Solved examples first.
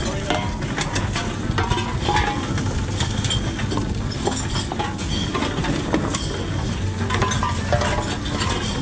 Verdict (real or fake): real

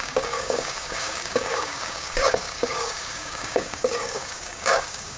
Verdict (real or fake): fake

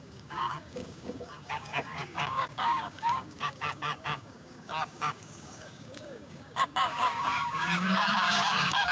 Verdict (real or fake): fake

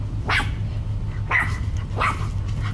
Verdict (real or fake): real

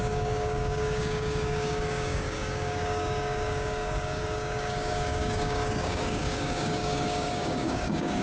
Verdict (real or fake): fake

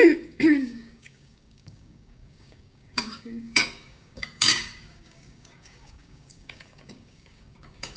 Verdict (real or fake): fake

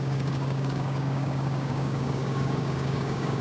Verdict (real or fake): fake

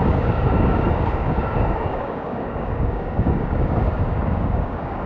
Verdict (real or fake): fake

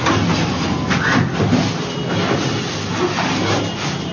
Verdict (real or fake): real